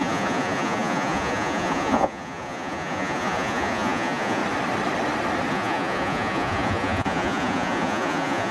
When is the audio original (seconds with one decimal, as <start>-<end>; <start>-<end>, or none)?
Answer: 4.4-5.5